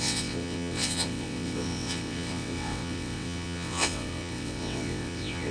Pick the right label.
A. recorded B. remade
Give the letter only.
B